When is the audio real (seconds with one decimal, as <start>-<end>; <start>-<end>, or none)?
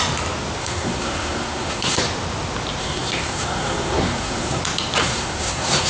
0.0-0.6; 2.0-2.8; 4.6-5.0